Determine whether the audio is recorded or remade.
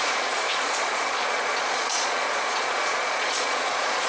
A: remade